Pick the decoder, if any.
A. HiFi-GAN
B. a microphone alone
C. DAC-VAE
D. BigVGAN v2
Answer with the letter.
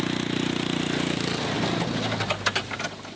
B